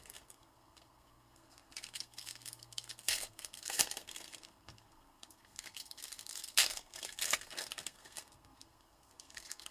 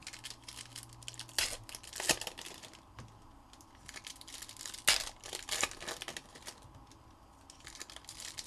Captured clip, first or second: second